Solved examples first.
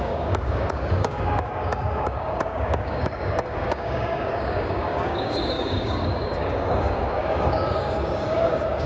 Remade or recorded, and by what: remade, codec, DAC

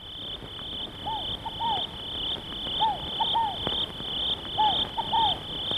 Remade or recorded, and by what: recorded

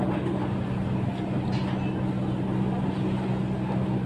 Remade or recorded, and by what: recorded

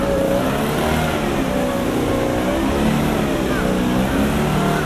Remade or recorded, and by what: recorded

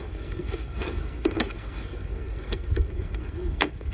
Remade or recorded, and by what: remade, codec, SNAC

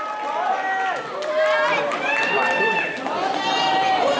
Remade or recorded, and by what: recorded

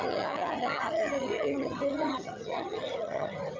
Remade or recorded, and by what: remade, vocoder, HiFi-GAN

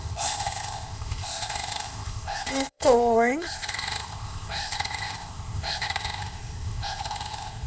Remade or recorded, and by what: remade, codec, ZipCodec